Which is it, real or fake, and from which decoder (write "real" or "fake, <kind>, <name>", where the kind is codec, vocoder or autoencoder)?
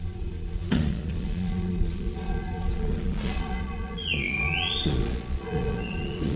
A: fake, vocoder, Vocos